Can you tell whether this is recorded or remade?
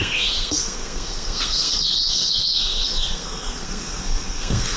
remade